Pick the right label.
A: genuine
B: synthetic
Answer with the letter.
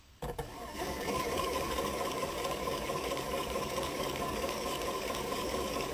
B